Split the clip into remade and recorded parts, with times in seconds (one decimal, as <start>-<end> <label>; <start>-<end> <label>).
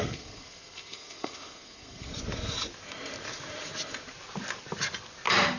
0.0-2.1 remade; 2.1-5.6 recorded